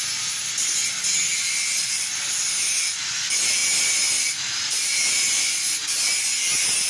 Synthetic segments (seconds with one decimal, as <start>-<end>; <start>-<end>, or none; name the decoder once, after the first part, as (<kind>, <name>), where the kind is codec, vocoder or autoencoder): none